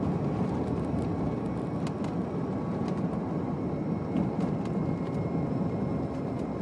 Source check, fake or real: real